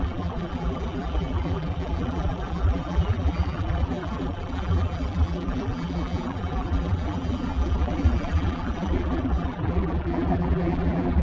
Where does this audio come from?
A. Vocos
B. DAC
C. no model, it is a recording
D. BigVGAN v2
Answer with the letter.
D